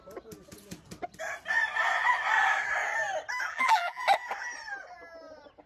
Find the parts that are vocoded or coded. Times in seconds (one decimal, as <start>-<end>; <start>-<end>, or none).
3.5-4.0